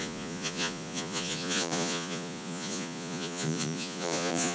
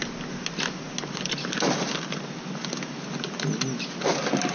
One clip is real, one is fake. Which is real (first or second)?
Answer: second